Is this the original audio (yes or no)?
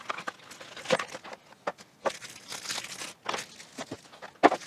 yes